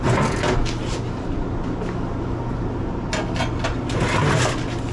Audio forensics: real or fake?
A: real